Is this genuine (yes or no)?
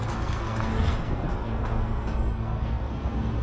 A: no